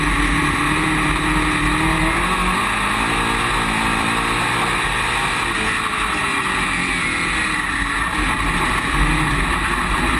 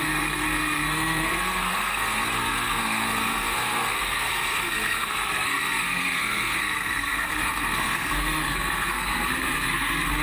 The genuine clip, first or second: first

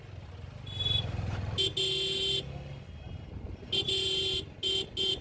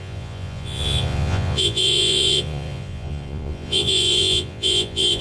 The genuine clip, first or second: first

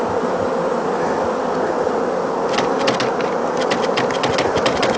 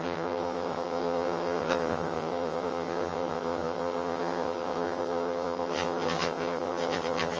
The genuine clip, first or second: first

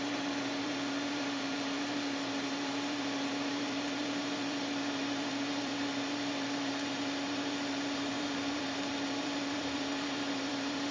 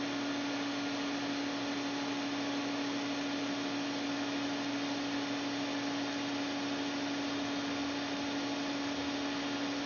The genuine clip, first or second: second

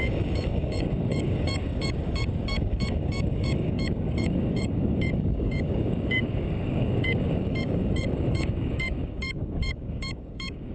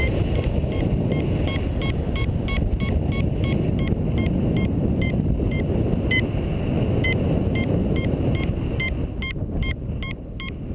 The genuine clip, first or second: second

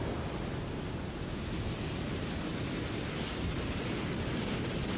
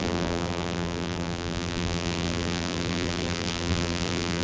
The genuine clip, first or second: first